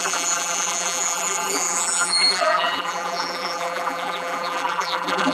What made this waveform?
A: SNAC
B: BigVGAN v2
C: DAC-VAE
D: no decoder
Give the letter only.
B